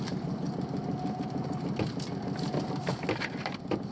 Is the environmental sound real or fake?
real